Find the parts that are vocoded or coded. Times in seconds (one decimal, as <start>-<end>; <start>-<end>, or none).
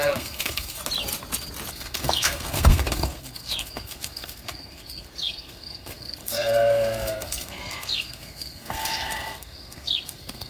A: 0.0-0.8; 1.7-10.5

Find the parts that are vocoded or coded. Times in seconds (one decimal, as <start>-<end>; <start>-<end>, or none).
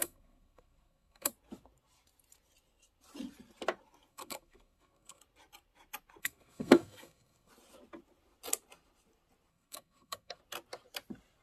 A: 0.0-1.3; 4.1-5.2; 6.2-7.5; 9.5-10.4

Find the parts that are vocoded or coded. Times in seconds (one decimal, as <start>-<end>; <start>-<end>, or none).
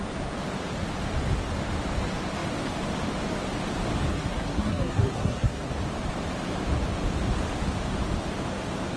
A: 4.1-5.7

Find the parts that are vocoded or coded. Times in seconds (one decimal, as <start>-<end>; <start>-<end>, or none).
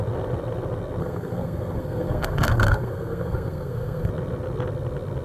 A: 1.0-4.1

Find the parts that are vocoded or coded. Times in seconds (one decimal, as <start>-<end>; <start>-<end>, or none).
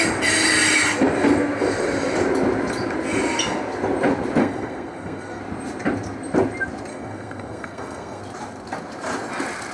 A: 4.4-5.4; 6.9-8.2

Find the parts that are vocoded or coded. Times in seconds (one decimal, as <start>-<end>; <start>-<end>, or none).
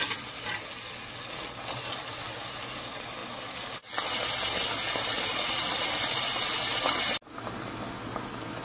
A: none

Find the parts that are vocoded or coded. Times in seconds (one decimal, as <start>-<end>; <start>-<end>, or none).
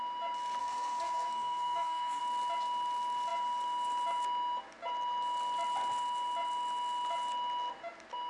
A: 0.6-2.2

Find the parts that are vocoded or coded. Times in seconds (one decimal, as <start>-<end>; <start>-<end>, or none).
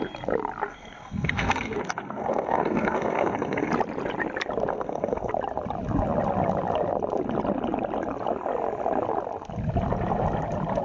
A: 0.7-3.7; 4.7-5.3